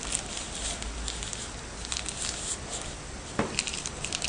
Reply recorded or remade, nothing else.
recorded